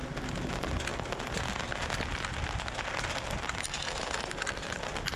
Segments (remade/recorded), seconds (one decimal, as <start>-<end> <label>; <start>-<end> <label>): 0.0-5.2 recorded